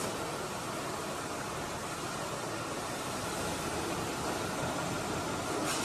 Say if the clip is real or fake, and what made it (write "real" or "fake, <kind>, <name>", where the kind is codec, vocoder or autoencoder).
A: real